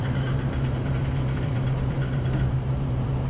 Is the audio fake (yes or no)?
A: yes